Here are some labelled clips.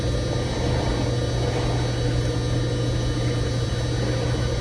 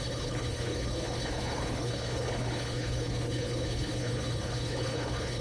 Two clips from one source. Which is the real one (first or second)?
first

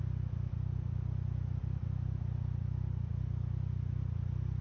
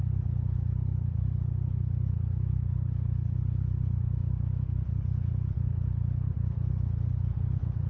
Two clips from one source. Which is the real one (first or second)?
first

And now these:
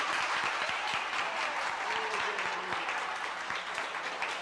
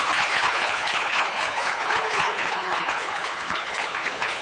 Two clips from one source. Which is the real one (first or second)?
first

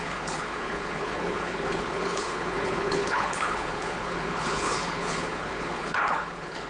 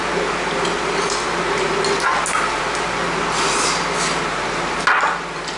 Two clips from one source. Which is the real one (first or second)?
second